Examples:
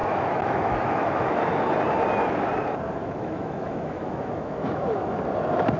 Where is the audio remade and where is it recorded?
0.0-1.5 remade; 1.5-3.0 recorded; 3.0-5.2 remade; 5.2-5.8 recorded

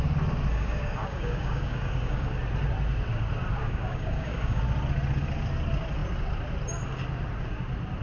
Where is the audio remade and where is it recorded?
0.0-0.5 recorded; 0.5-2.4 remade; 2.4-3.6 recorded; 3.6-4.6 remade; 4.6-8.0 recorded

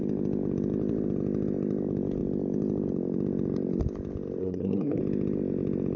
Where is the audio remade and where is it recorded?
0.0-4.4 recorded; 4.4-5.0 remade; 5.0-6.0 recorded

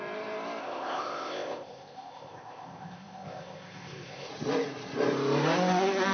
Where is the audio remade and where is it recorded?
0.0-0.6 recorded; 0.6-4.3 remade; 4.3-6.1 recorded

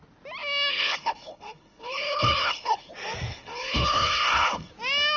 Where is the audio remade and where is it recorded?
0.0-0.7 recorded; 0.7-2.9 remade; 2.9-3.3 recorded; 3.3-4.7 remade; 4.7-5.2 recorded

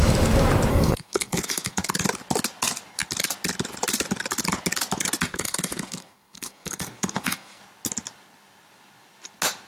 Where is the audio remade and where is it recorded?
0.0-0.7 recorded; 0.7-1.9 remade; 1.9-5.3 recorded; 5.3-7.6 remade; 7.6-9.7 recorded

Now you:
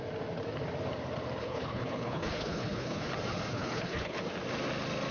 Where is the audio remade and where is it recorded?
0.0-1.4 recorded; 1.4-3.1 remade; 3.1-3.5 recorded; 3.5-4.2 remade; 4.2-5.1 recorded

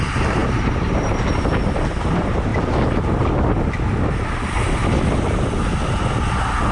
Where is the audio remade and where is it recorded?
0.0-2.5 remade; 2.5-6.7 recorded